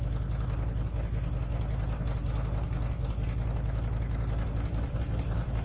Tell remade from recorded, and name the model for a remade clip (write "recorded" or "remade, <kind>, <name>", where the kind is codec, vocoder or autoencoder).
recorded